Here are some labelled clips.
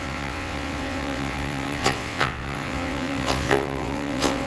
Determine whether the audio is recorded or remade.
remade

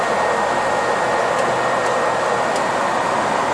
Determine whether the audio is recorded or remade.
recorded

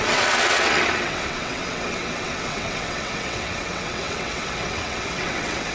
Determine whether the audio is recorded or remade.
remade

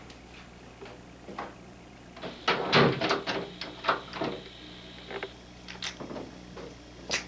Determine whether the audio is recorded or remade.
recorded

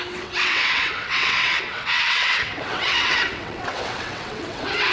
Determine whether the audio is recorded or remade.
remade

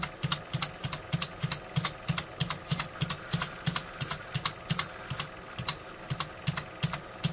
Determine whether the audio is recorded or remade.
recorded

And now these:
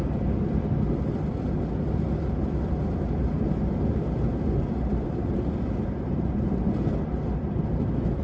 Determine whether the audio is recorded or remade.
recorded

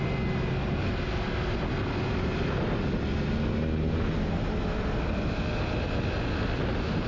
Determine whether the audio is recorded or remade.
recorded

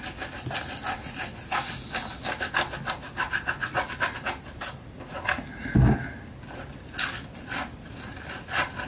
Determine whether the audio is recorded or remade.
recorded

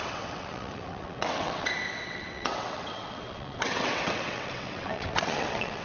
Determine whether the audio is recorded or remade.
remade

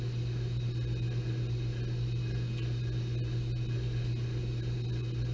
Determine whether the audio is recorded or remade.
recorded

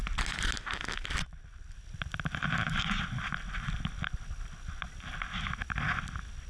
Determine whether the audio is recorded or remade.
recorded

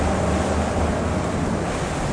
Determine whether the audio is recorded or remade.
recorded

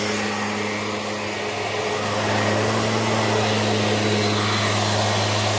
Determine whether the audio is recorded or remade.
recorded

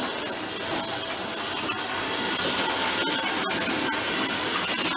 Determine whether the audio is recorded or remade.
recorded